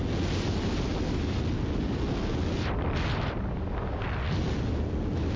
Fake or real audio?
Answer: real